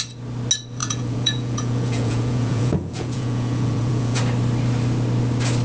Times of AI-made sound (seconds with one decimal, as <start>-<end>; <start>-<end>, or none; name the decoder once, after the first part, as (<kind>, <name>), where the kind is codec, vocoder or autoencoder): 0.8-4.2 (vocoder, Vocos)